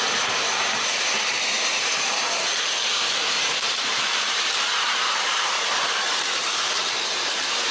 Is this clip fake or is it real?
fake